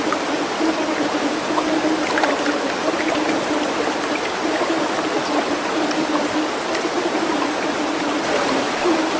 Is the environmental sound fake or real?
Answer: real